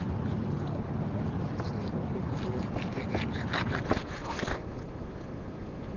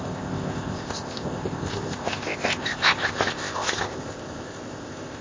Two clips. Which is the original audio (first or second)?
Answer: first